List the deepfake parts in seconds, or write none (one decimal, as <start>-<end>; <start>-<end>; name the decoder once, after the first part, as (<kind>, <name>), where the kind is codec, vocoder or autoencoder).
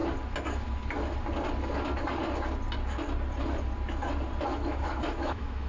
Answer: 4.5-5.7 (autoencoder, DAC-VAE)